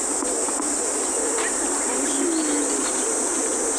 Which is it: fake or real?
real